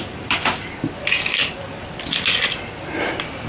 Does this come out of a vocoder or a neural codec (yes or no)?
no